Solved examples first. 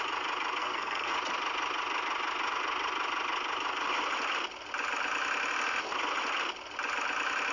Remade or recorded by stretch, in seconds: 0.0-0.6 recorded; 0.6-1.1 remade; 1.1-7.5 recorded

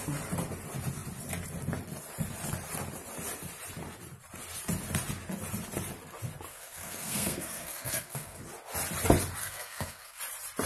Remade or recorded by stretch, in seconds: 0.0-6.5 recorded; 6.5-8.4 remade; 8.4-9.4 recorded; 9.4-10.2 remade; 10.2-10.7 recorded